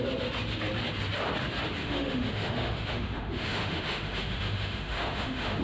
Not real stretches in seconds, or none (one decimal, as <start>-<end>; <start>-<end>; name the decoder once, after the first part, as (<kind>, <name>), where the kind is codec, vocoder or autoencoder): 1.8-5.6 (autoencoder, DAC-VAE)